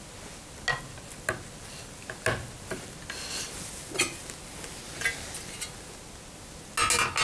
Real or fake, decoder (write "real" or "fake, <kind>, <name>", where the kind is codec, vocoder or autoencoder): real